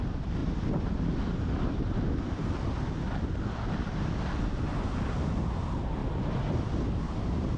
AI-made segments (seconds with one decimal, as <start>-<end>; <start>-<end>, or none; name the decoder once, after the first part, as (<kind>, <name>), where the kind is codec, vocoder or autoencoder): none